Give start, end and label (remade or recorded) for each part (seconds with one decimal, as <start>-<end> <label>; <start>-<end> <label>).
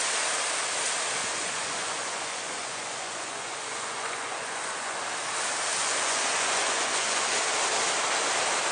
0.0-1.2 recorded; 1.2-5.0 remade; 5.0-5.8 recorded; 5.8-7.4 remade; 7.4-8.7 recorded